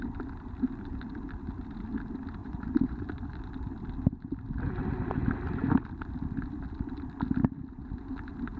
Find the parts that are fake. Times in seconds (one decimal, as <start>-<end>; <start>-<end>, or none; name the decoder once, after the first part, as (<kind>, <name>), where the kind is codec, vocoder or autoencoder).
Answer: 2.4-3.0 (vocoder, Vocos)